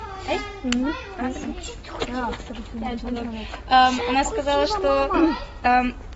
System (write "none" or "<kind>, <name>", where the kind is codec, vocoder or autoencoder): none